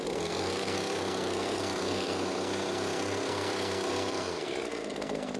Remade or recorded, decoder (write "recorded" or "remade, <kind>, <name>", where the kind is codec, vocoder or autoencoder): remade, codec, SNAC